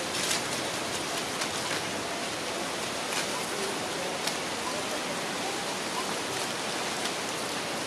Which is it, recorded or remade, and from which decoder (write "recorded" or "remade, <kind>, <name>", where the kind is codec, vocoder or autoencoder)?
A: recorded